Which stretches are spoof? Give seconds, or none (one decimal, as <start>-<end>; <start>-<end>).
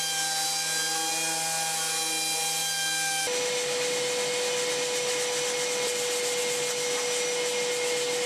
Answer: none